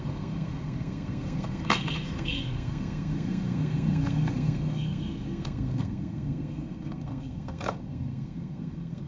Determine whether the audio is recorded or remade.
remade